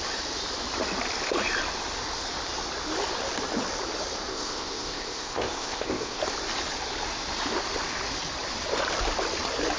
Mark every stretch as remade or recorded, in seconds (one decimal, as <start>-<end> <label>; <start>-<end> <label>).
0.0-4.3 recorded; 4.3-6.2 remade; 6.2-9.8 recorded